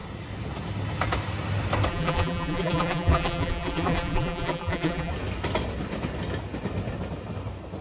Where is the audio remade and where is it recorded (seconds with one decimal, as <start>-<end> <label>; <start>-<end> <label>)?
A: 0.0-1.9 recorded; 1.9-5.1 remade; 5.1-7.8 recorded